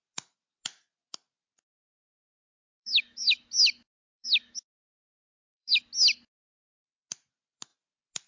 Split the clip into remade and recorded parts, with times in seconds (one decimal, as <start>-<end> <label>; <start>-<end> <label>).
0.0-2.0 recorded; 2.0-5.8 remade; 5.8-8.3 recorded